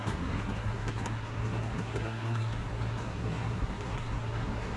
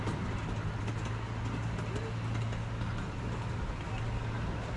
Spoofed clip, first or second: first